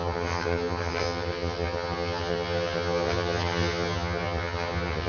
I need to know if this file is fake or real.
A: fake